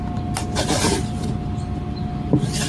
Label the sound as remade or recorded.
recorded